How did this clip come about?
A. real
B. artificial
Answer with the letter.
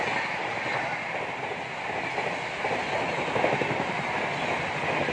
A